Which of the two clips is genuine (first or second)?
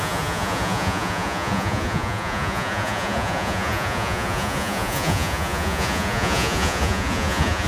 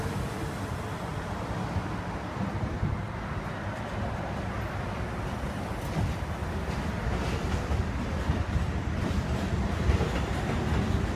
second